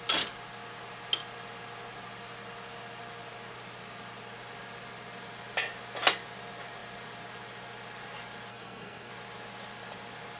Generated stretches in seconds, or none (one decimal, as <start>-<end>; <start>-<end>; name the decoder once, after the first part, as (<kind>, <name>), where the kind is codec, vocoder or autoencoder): 8.5-9.1 (codec, SNAC)